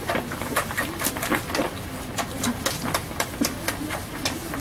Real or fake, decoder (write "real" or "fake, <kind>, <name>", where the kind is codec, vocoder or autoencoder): real